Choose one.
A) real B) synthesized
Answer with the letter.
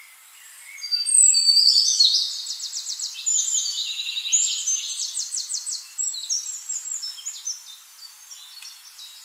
A